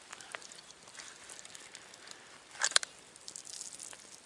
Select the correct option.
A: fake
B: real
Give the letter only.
B